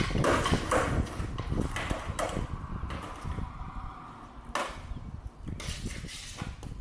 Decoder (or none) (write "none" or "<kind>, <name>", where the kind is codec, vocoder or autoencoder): none